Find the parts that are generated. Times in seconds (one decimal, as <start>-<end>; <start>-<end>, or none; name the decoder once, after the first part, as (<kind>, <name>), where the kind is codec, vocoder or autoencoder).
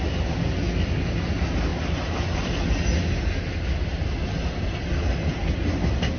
none